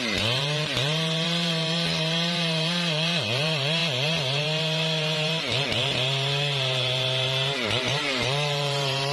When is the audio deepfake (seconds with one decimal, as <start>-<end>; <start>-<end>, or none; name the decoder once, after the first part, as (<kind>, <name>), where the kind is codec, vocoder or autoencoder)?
0.0-9.1 (vocoder, BigVGAN v2)

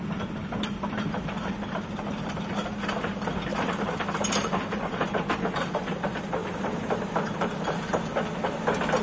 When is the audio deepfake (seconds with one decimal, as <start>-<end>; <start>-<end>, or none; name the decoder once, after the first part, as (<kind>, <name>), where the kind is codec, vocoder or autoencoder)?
0.4-2.2 (vocoder, BigVGAN v2); 3.5-5.8; 6.4-8.0

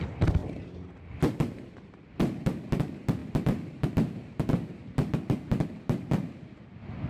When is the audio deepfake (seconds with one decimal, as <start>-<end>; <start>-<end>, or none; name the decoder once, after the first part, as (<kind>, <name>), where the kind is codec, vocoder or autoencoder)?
none